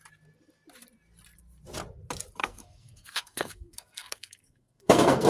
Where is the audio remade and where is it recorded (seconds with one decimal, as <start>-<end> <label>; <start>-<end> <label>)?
0.0-2.4 recorded; 2.4-5.3 remade